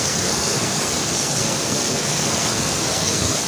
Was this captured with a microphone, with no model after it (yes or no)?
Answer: no